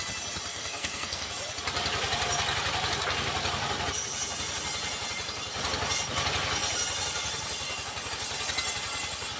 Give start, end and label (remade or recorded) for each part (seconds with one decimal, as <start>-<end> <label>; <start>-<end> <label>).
0.0-0.5 recorded; 0.5-1.3 remade; 1.3-9.4 recorded